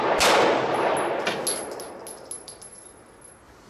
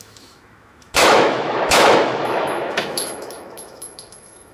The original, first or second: first